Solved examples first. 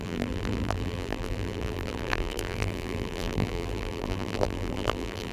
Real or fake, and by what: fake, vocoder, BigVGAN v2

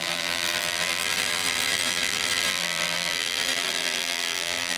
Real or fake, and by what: fake, vocoder, BigVGAN v2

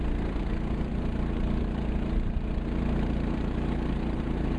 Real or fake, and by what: fake, vocoder, BigVGAN v2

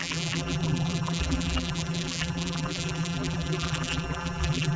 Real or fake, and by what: fake, vocoder, BigVGAN v2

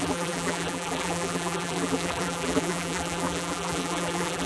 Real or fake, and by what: fake, vocoder, BigVGAN v2